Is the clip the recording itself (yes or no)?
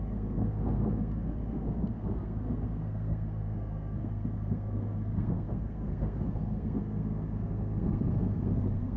no